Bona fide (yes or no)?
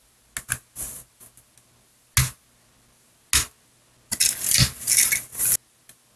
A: yes